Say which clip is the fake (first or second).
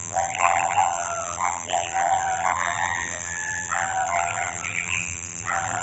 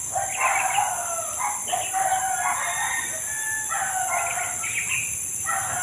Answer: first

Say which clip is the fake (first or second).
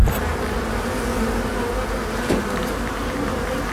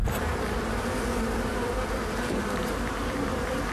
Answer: second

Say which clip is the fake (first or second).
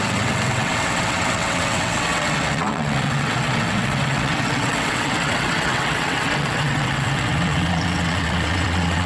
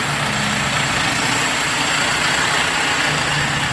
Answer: first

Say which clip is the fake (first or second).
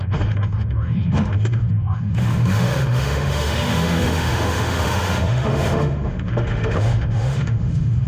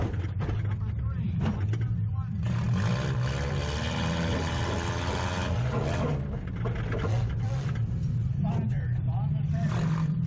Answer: first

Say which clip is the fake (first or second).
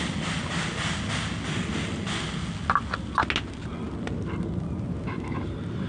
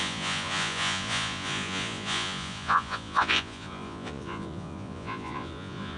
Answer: second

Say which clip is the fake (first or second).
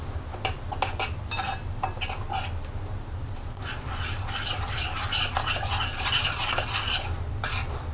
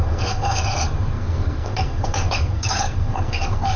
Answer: second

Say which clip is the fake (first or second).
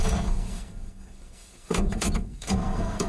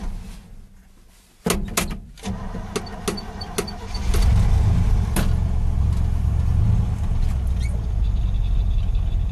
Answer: first